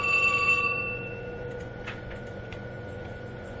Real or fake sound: fake